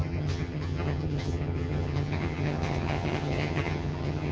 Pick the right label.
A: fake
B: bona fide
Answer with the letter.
A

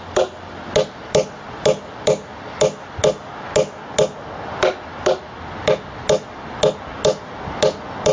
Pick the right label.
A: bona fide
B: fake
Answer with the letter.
A